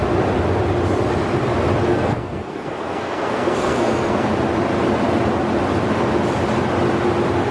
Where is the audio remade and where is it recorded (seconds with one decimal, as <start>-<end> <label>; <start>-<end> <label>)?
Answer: 0.0-1.9 recorded; 1.9-4.3 remade; 4.3-7.5 recorded